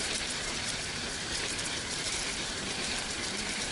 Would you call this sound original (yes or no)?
no